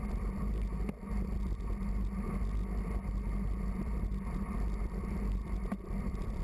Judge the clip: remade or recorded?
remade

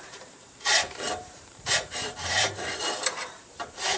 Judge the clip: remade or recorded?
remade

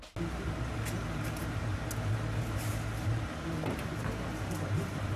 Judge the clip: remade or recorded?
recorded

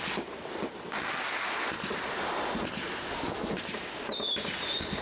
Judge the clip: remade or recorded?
recorded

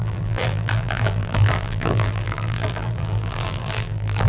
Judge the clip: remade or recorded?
remade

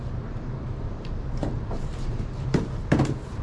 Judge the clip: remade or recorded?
remade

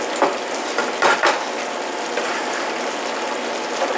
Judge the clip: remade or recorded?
recorded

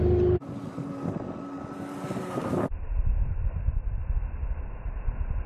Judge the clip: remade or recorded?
recorded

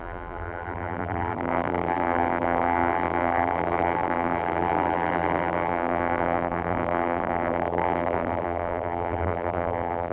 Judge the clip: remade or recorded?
remade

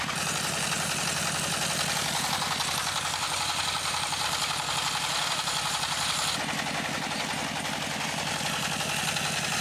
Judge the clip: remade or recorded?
recorded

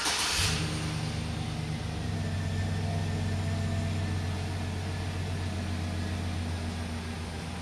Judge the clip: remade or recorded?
recorded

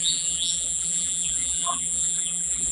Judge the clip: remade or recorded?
remade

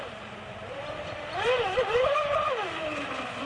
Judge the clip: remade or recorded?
remade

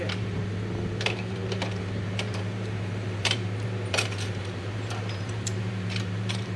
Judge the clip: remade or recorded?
remade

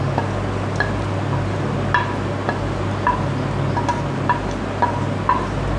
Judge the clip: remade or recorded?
recorded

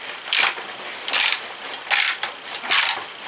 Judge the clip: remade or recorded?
recorded